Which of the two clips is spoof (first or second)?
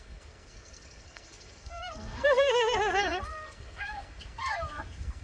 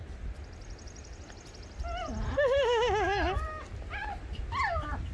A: first